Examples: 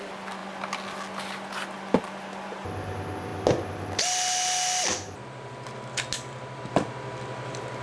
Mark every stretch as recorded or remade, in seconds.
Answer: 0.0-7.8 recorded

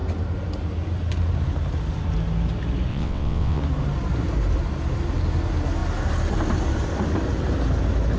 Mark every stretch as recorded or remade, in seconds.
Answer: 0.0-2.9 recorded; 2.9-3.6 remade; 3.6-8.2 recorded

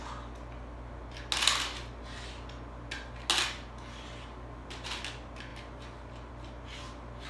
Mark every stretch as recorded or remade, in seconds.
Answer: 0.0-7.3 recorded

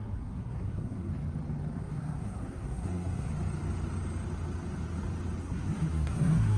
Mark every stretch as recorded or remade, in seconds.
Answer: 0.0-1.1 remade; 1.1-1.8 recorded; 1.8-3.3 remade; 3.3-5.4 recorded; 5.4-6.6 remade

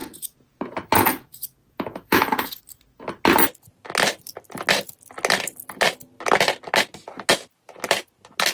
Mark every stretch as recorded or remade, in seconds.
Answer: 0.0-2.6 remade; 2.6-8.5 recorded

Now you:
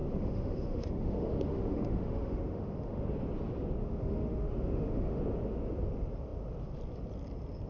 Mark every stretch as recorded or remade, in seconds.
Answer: 0.0-3.0 remade; 3.0-3.8 recorded; 3.8-5.2 remade; 5.2-7.7 recorded